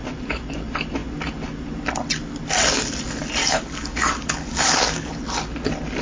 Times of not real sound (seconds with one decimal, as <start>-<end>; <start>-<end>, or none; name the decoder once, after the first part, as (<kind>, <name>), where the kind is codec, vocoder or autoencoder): 3.4-5.1 (codec, DAC)